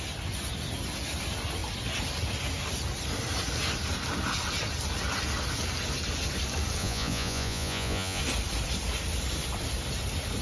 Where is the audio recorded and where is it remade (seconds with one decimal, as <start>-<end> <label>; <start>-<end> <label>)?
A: 0.0-6.8 recorded; 6.8-8.2 remade; 8.2-10.4 recorded